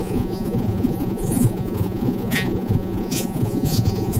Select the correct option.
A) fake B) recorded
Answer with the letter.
A